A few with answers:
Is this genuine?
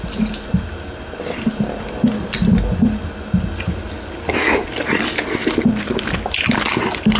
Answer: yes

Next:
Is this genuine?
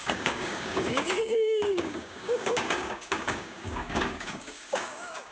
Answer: no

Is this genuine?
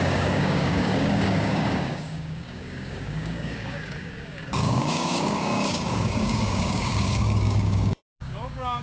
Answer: no